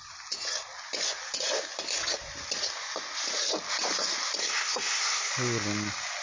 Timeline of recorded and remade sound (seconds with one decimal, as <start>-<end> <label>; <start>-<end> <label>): 0.0-4.4 recorded; 4.4-5.3 remade; 5.3-6.2 recorded